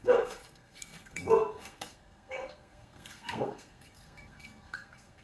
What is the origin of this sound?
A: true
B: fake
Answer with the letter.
B